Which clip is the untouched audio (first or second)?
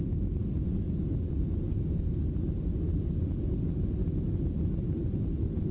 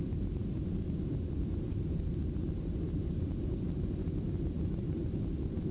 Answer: first